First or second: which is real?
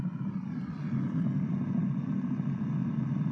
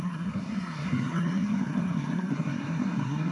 first